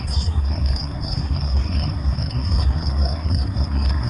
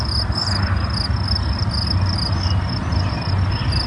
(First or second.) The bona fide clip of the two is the second